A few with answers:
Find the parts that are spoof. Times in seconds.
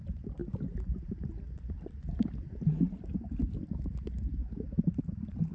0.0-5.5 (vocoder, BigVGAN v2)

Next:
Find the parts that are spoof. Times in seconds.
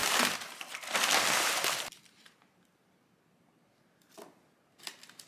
none